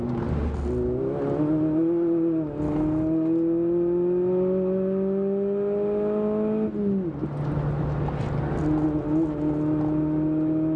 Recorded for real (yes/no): yes